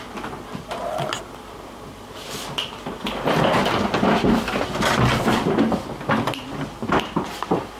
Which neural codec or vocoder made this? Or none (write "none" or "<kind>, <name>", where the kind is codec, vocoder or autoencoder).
none